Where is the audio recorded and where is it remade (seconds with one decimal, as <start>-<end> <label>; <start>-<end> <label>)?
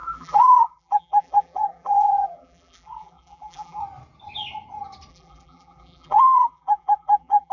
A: 0.0-3.8 remade; 3.8-5.1 recorded; 5.1-7.5 remade